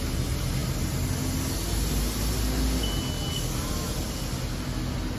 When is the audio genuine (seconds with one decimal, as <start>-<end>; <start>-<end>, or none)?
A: 0.0-5.2